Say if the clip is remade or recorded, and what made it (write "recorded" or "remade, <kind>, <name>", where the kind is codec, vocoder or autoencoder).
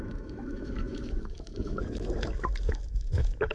remade, autoencoder, DAC-VAE